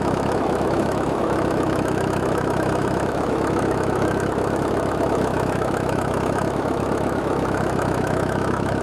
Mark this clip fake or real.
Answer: fake